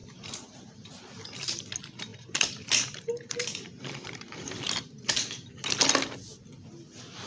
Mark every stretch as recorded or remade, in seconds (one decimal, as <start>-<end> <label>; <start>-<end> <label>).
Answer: 0.0-0.9 remade; 0.9-2.1 recorded; 2.1-5.5 remade; 5.5-7.3 recorded

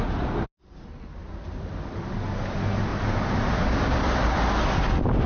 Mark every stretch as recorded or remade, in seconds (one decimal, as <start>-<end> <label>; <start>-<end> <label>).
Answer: 0.0-2.9 recorded; 2.9-4.4 remade; 4.4-5.3 recorded